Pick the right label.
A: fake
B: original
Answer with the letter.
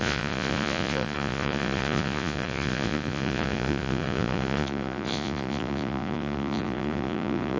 A